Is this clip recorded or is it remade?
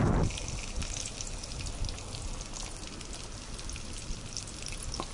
recorded